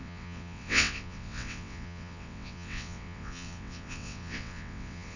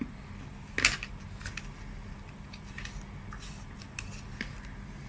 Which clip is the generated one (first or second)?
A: first